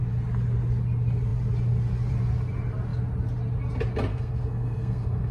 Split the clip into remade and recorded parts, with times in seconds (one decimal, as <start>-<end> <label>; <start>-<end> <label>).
0.0-4.1 recorded; 4.1-5.3 remade